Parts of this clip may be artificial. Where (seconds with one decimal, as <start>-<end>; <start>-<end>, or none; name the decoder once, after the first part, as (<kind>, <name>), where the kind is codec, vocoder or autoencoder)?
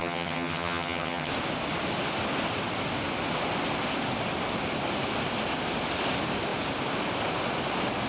0.0-1.3 (vocoder, HiFi-GAN)